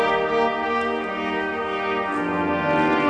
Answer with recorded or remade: recorded